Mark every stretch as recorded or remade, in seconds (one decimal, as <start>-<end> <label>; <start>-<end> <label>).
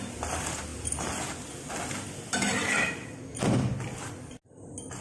0.0-5.0 recorded